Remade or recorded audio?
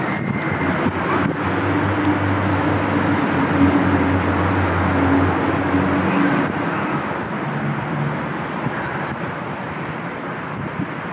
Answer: recorded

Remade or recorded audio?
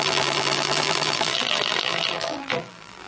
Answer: remade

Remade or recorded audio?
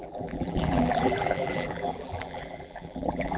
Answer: remade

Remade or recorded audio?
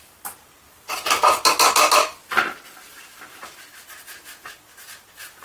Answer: recorded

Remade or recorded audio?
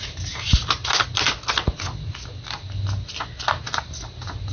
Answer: recorded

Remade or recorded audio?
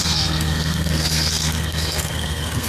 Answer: remade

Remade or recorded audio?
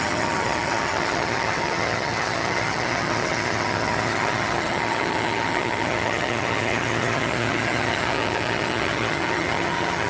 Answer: remade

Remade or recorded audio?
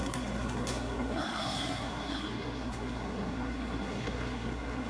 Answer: remade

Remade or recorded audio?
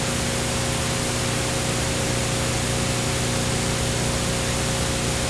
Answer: recorded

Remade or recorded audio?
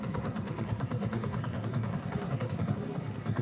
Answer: remade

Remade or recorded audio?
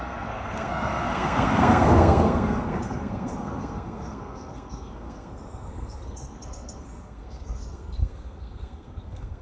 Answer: remade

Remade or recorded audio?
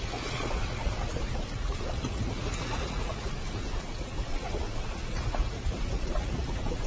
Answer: remade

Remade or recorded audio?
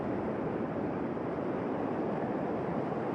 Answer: remade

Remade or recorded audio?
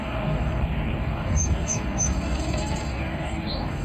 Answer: remade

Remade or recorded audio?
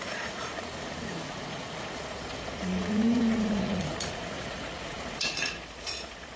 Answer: remade